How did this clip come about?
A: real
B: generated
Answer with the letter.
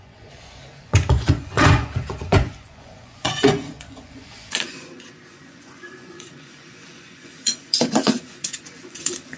B